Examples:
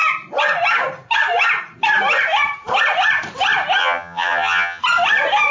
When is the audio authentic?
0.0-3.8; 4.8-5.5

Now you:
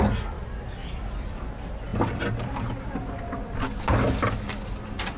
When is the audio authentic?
0.0-5.2

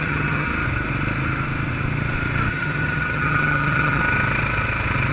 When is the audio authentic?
0.5-2.5; 4.0-5.1

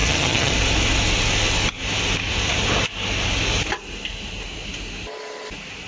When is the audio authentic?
0.5-5.9

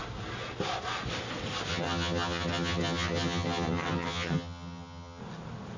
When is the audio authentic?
0.0-1.7; 5.2-5.8

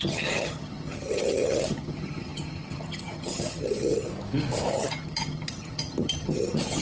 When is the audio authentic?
4.1-4.7

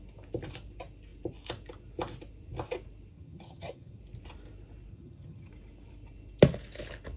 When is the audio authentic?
0.0-3.1; 4.0-4.9; 5.5-7.2

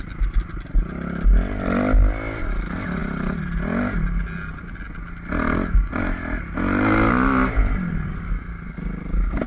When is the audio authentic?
0.0-9.5